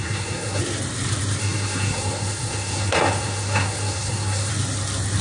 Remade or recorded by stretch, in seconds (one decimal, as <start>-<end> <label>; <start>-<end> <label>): 0.0-0.6 remade; 0.6-1.4 recorded; 1.4-4.5 remade; 4.5-5.2 recorded